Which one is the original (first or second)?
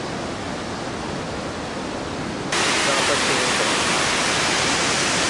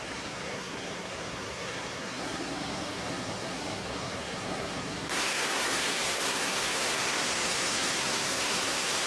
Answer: first